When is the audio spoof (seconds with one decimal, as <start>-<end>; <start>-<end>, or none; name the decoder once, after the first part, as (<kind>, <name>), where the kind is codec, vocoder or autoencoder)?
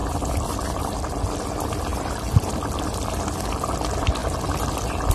0.0-1.4 (vocoder, BigVGAN v2); 1.9-3.2; 4.2-5.1